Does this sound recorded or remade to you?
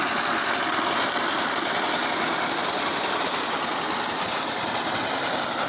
recorded